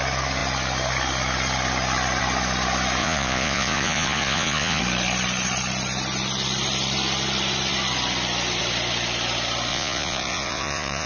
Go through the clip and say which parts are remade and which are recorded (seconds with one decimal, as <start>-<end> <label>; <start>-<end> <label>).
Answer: 0.0-3.0 recorded; 3.0-4.8 remade; 4.8-9.7 recorded; 9.7-11.1 remade